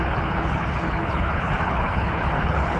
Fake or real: fake